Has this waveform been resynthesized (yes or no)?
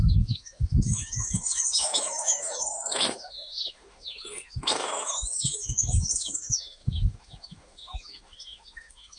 yes